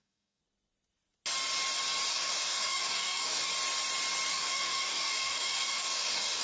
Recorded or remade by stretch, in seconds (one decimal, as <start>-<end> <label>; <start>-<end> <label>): 0.0-0.4 remade; 0.4-2.1 recorded; 2.1-3.5 remade; 3.5-4.3 recorded; 4.3-6.4 remade